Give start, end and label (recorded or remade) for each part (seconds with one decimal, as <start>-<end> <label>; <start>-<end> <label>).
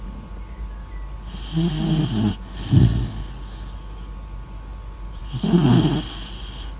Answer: 0.0-6.8 recorded